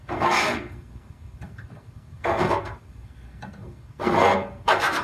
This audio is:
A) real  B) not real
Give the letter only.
B